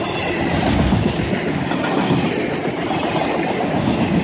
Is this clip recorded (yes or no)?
yes